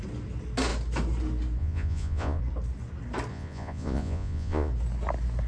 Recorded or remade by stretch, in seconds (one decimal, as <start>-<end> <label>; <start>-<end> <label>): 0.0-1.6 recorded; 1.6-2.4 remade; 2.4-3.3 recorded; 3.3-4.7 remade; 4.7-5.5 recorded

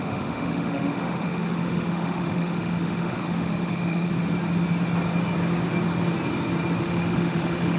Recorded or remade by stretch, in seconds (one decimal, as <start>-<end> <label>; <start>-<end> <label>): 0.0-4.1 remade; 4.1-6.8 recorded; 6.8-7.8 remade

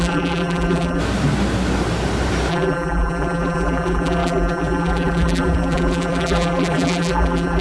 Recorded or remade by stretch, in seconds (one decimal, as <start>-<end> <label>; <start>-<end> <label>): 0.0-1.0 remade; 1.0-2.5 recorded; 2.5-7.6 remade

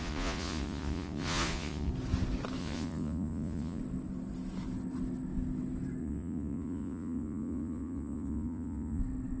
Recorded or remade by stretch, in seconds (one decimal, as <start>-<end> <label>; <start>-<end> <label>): 0.0-1.9 remade; 1.9-2.6 recorded; 2.6-3.8 remade; 3.8-6.0 recorded; 6.0-9.0 remade; 9.0-9.4 recorded

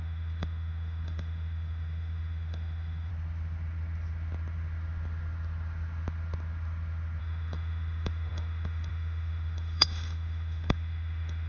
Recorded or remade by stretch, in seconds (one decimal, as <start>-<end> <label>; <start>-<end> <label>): 0.0-3.1 remade; 3.1-7.2 recorded; 7.2-11.5 remade

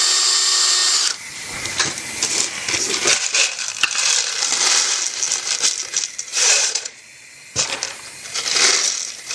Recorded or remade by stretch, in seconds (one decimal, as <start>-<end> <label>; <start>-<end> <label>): 0.0-6.3 recorded; 6.3-7.0 remade; 7.0-9.3 recorded

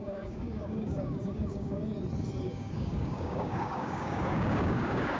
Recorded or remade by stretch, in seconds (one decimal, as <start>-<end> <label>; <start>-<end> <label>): 0.0-1.8 remade; 1.8-2.4 recorded; 2.4-5.2 remade

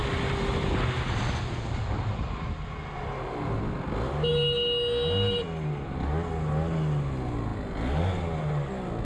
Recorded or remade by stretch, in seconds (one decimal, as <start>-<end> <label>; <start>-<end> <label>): 0.0-9.0 recorded